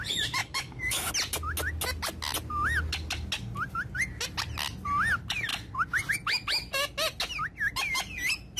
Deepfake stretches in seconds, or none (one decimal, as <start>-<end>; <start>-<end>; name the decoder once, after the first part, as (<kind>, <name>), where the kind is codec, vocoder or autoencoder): 0.4-1.1 (codec, DAC)